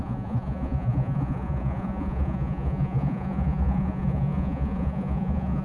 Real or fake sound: fake